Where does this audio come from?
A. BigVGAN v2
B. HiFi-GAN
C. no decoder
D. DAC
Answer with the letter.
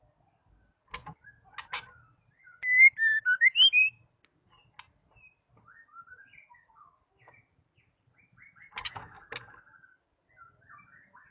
C